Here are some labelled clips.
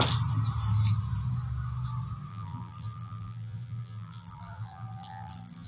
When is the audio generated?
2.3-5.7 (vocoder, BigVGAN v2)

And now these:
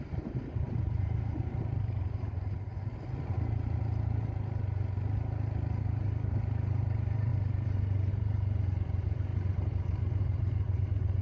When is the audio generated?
0.0-2.7 (vocoder, BigVGAN v2); 5.8-7.3; 8.1-9.3; 10.2-11.2

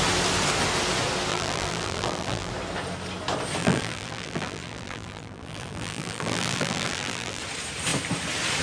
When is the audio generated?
1.3-2.5 (vocoder, BigVGAN v2); 3.6-7.4

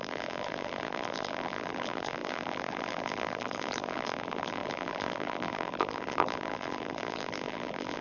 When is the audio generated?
0.0-8.0 (vocoder, BigVGAN v2)

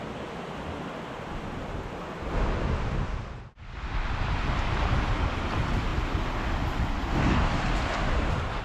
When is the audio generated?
none

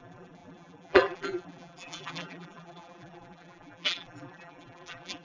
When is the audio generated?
0.0-5.2 (vocoder, BigVGAN v2)

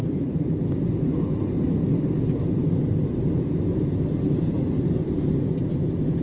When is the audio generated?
0.0-0.6 (vocoder, BigVGAN v2); 1.9-5.3

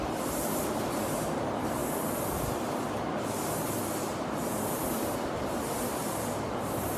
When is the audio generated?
0.0-1.8 (vocoder, BigVGAN v2); 4.0-7.0